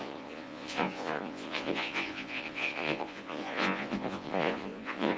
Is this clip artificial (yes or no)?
yes